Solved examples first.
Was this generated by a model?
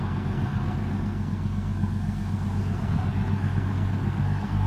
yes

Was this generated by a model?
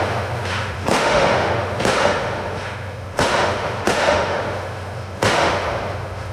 yes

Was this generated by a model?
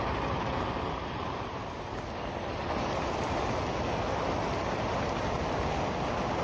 no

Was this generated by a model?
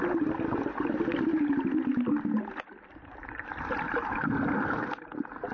no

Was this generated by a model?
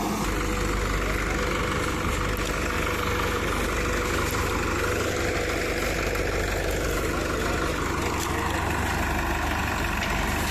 no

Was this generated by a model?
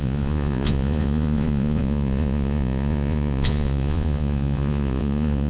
yes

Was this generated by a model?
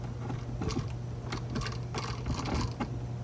no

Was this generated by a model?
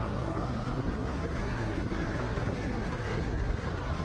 yes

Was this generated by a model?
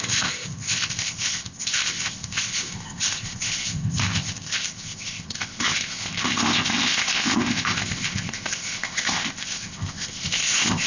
yes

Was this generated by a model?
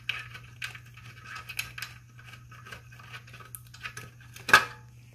no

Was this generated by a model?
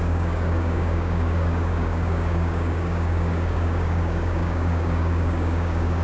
yes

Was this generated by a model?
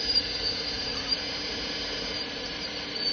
yes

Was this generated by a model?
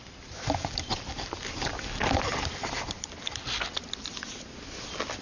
no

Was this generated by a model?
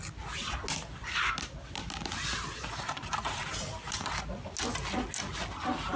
no